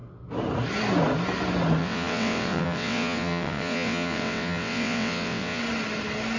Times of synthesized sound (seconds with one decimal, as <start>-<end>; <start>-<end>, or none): 1.8-5.6